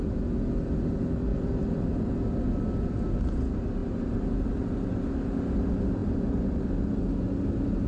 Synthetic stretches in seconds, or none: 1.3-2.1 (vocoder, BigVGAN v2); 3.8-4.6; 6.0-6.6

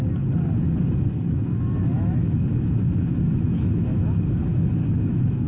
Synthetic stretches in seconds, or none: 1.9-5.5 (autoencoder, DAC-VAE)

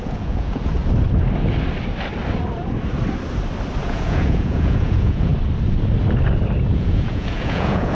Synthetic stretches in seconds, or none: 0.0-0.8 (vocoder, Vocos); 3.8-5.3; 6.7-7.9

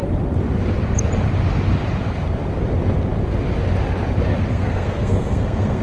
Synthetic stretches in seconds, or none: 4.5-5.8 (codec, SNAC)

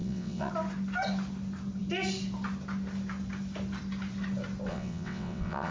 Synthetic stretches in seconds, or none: 0.0-0.5 (vocoder, WaveNeXt); 4.7-5.7

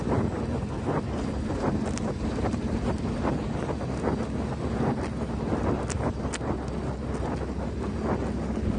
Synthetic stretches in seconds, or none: 0.6-3.6 (vocoder, BigVGAN v2)

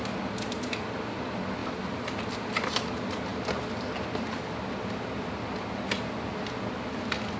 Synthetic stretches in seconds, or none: none